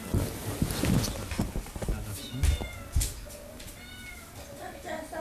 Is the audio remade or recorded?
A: recorded